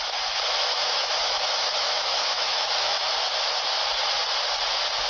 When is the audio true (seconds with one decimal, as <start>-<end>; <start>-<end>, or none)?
0.0-0.7; 3.1-5.1